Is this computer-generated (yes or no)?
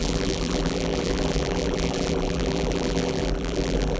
yes